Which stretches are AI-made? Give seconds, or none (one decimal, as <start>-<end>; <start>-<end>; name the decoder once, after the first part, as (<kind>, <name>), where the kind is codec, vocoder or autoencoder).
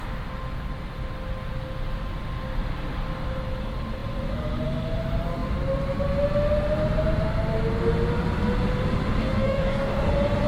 9.2-10.1 (codec, DAC)